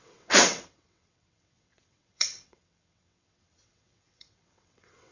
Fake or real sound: fake